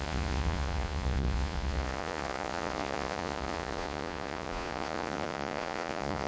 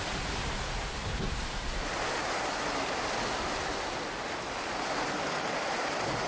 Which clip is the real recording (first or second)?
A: second